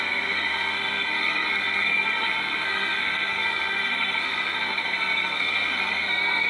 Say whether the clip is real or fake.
fake